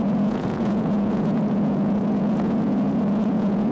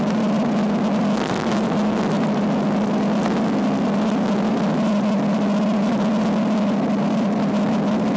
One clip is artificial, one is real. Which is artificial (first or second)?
first